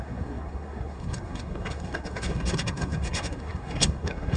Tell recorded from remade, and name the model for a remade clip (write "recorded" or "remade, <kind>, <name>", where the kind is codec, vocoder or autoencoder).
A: remade, codec, SNAC